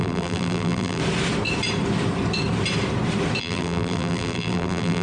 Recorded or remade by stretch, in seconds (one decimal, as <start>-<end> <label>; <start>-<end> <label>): 0.0-1.0 remade; 1.0-3.4 recorded; 3.4-5.0 remade